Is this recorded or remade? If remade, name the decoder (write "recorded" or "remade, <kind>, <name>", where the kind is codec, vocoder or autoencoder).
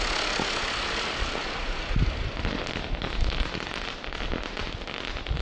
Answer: recorded